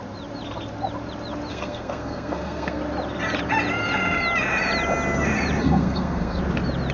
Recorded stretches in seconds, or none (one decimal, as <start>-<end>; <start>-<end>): 0.0-1.5; 2.8-5.6; 6.4-6.9